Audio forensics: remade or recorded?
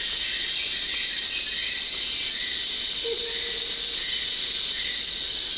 recorded